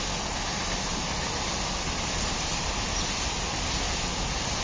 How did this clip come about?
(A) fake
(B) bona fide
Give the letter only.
B